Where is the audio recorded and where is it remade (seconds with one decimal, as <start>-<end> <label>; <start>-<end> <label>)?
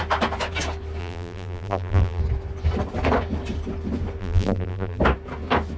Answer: 0.0-1.0 recorded; 1.0-2.2 remade; 2.2-4.2 recorded; 4.2-5.0 remade; 5.0-5.8 recorded